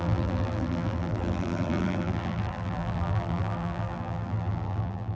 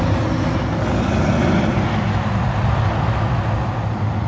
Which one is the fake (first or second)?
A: first